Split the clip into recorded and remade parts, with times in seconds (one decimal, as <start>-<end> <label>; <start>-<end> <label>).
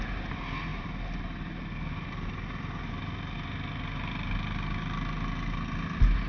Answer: 0.0-6.3 recorded